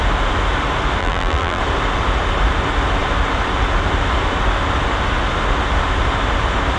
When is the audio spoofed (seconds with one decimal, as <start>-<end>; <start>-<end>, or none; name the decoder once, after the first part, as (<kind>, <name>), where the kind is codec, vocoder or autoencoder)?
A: 1.0-1.6 (vocoder, BigVGAN v2)